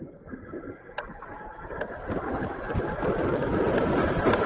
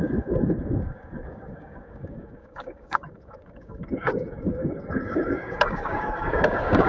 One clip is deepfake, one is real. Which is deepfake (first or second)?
second